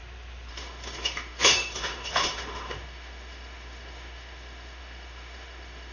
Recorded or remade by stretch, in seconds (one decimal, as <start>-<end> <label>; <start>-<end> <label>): 0.0-0.5 recorded; 0.5-5.9 remade